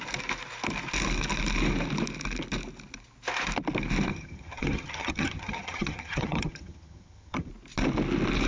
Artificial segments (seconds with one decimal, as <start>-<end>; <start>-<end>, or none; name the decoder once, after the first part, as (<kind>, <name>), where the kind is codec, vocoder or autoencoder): 4.1-7.5 (vocoder, HiFi-GAN)